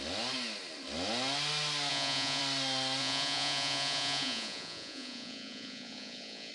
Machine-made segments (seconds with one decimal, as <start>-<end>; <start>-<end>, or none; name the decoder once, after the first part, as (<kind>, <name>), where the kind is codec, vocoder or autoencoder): 1.9-2.4 (vocoder, Vocos); 3.0-6.5